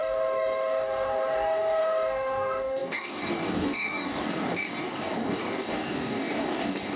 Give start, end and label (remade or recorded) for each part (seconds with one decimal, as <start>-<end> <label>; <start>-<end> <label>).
0.0-7.0 remade